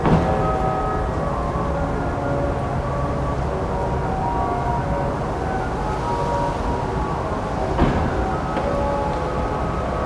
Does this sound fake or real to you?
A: real